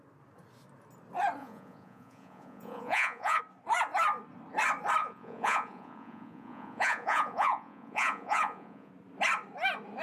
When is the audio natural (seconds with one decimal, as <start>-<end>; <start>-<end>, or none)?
0.0-1.4; 3.4-5.0; 8.9-10.0